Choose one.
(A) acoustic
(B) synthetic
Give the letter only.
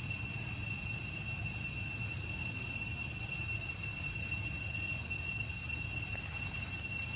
A